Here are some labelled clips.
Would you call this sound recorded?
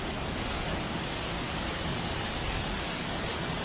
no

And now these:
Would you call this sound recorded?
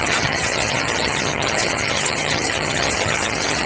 no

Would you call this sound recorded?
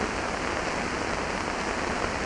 yes